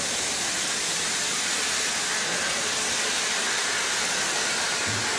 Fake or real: real